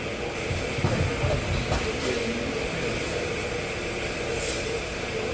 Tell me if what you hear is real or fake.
real